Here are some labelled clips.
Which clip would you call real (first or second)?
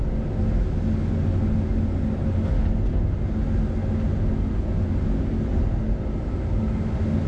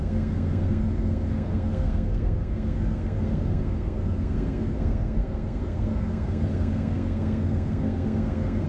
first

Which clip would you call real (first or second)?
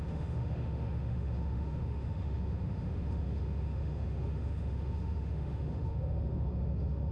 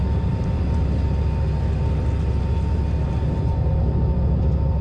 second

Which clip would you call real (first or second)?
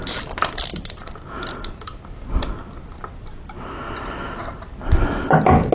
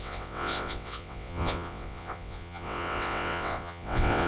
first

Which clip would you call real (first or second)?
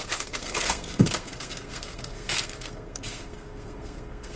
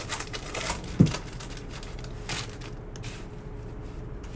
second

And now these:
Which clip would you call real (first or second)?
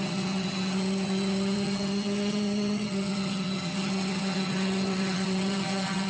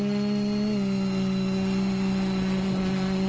second